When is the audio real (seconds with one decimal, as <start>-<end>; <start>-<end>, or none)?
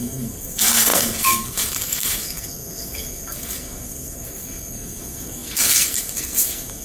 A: none